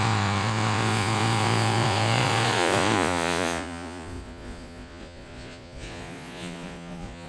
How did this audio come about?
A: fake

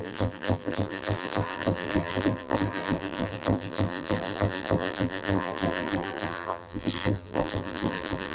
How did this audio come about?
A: fake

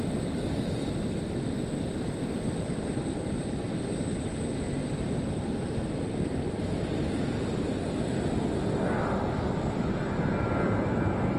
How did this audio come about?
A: real